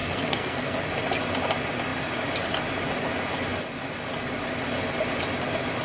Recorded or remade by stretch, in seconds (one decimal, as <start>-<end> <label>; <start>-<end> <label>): 0.0-0.8 remade; 0.8-5.8 recorded